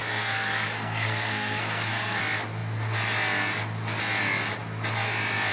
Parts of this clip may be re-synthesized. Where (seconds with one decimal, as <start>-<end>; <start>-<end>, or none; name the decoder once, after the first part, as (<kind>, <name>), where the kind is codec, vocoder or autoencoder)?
0.0-2.2 (codec, SNAC)